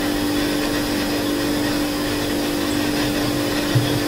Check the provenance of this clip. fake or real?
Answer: real